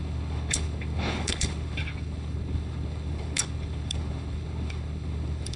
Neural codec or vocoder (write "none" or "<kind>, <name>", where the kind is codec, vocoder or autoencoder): codec, HILCodec